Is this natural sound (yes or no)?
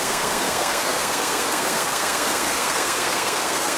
no